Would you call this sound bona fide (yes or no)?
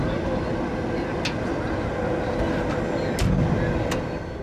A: yes